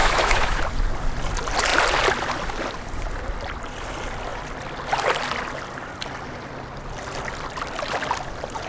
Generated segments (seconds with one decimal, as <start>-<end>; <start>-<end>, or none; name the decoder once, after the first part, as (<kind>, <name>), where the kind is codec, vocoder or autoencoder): 0.0-0.6 (autoencoder, DAC-VAE)